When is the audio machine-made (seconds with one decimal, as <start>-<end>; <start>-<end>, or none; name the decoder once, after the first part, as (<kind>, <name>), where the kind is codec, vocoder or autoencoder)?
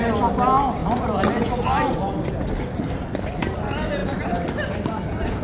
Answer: 0.8-1.9 (vocoder, BigVGAN v2)